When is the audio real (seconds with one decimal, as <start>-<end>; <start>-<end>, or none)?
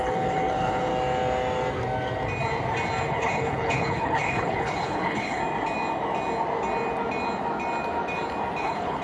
0.9-3.1; 5.4-8.6